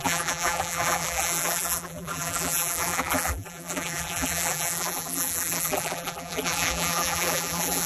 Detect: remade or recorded remade